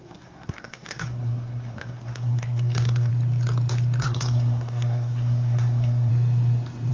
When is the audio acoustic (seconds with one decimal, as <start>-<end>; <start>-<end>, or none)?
3.1-4.0; 6.1-6.9